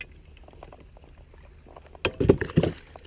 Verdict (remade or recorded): recorded